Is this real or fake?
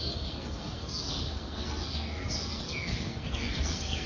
fake